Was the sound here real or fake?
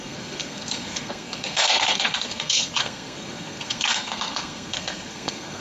fake